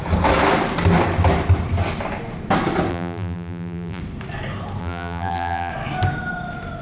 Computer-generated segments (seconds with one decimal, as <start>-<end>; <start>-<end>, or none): 2.9-4.0; 4.8-5.7